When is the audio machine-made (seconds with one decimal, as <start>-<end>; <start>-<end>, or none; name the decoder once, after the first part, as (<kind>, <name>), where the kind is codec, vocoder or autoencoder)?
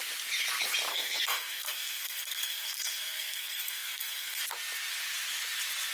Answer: 0.9-4.4 (codec, SNAC)